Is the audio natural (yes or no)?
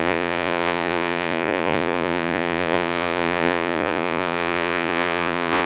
no